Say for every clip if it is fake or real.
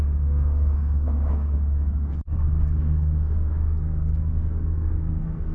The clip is fake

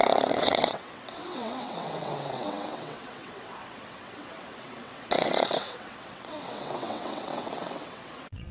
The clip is fake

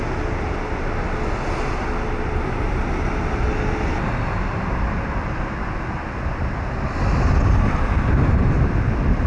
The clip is real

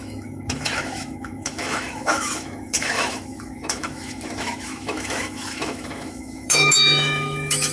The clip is fake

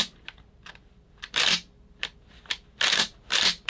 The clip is fake